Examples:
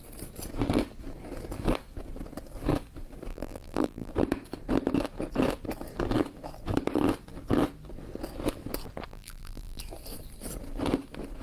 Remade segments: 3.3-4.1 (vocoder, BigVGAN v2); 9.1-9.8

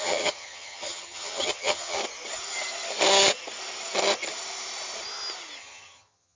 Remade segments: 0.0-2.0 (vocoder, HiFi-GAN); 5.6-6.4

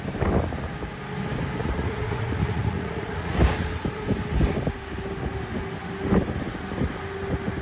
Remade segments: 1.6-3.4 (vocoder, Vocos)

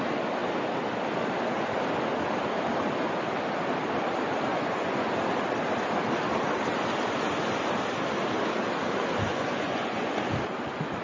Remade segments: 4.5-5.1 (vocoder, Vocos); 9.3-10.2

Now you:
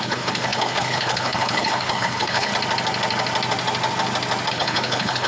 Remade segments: 0.0-2.5 (codec, HILCodec); 4.5-5.3

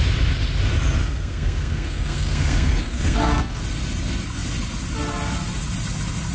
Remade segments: 1.0-3.6 (codec, SNAC)

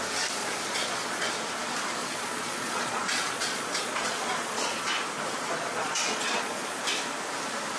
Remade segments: 0.4-1.3 (vocoder, Vocos); 2.0-4.9; 5.7-6.8